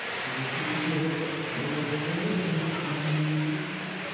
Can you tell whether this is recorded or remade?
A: recorded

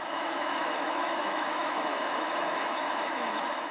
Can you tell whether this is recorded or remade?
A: remade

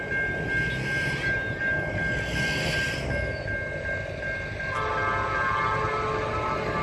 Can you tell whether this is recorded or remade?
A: recorded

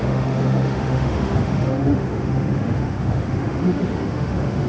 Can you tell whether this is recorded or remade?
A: remade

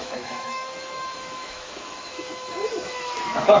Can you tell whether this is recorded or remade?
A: remade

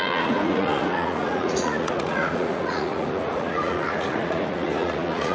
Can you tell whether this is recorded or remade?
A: remade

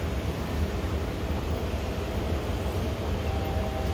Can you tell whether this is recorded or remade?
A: recorded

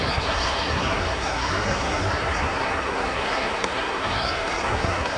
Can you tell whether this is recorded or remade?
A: remade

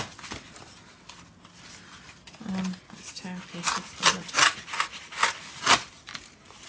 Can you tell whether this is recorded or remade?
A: recorded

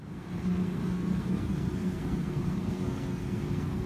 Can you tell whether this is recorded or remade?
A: remade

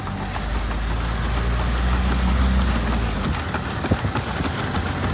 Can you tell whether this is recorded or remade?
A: recorded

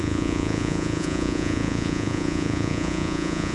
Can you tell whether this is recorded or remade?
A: remade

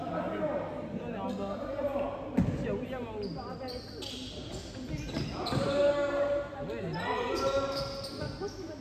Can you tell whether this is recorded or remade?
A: recorded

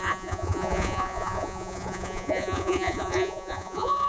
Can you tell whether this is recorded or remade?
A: remade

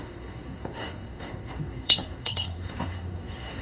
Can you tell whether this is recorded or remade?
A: remade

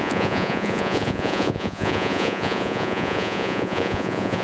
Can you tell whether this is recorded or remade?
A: remade